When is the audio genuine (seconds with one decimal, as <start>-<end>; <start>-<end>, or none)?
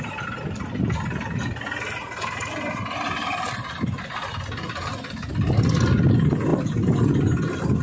0.0-7.8